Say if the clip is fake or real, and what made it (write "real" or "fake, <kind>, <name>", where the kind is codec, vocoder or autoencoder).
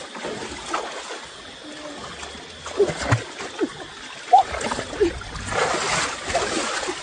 real